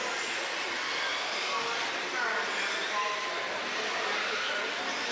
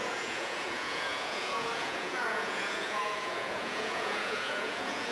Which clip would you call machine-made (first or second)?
second